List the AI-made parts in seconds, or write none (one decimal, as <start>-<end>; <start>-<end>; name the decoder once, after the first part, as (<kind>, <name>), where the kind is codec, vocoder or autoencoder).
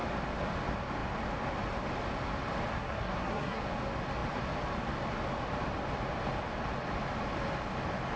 2.7-3.6 (codec, SNAC)